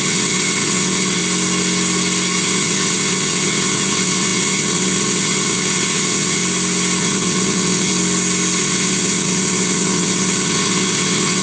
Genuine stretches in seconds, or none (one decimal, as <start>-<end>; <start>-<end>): 1.2-2.4; 6.4-7.0; 7.9-8.6